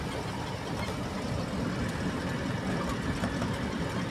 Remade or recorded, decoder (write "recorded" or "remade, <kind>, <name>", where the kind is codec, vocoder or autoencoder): recorded